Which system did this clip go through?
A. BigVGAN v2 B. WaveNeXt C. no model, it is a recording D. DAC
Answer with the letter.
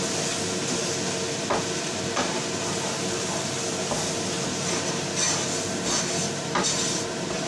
C